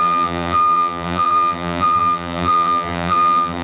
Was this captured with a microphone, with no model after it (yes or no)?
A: no